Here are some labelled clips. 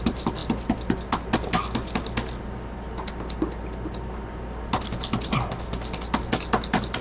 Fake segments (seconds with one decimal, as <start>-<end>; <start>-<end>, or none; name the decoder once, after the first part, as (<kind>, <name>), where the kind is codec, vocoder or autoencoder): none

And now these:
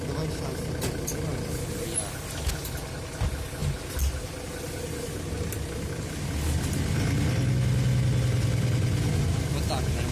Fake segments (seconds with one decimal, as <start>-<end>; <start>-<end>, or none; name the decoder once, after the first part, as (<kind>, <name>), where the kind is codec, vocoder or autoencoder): none

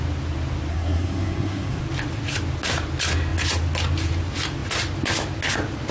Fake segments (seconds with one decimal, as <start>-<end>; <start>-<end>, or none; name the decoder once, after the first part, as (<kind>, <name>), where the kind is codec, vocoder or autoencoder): 0.7-1.8 (codec, SNAC)

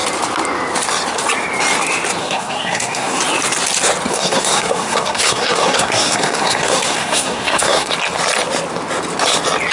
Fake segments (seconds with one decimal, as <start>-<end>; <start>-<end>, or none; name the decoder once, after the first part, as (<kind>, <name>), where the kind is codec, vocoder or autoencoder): 2.2-3.2 (codec, SNAC); 4.1-7.9